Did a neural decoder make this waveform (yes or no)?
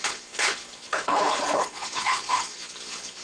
yes